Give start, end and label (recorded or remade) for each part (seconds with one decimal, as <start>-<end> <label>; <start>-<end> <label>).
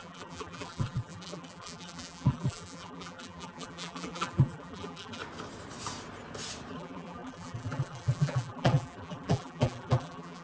0.0-5.2 remade; 5.2-6.7 recorded; 6.7-10.4 remade